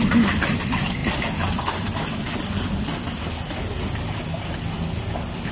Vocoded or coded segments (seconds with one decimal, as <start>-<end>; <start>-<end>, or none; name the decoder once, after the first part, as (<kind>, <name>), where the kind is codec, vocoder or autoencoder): none

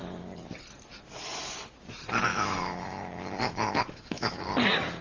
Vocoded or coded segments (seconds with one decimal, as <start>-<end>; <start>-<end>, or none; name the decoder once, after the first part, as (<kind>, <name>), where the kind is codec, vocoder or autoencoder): 2.3-4.4 (autoencoder, DAC-VAE)

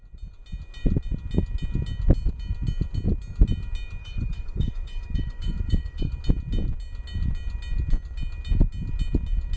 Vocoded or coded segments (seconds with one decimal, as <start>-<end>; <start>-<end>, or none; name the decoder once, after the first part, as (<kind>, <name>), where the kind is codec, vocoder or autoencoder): 4.0-6.1 (autoencoder, DAC-VAE)

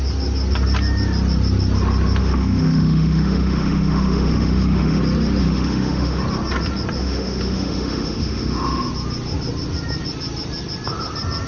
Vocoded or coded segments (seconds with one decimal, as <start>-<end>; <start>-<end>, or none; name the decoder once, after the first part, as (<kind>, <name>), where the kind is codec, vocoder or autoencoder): 2.2-5.0 (autoencoder, DAC-VAE); 5.4-6.2; 7.0-8.9

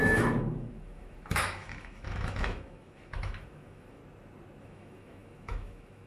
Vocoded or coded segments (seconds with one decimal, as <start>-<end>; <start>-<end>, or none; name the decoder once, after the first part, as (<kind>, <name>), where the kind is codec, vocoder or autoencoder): 0.0-4.0 (autoencoder, DAC-VAE); 4.6-6.1

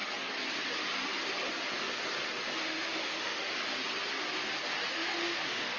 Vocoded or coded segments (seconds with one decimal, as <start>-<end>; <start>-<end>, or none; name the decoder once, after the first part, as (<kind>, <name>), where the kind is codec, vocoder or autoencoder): 2.6-3.4 (autoencoder, DAC-VAE); 4.9-5.8